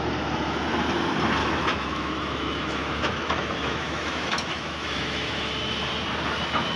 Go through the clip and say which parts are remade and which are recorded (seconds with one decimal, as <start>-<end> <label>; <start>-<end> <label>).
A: 0.0-1.4 recorded; 1.4-5.5 remade; 5.5-6.8 recorded

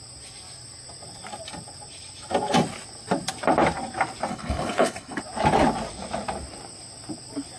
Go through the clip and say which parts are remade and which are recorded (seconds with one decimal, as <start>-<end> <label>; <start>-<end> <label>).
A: 0.0-4.3 recorded; 4.3-5.2 remade; 5.2-7.6 recorded